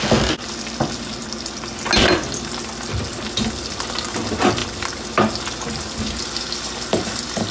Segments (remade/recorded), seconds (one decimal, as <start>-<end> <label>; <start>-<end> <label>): 0.0-7.5 recorded